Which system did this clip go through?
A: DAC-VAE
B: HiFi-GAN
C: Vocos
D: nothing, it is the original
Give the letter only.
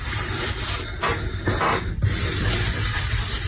D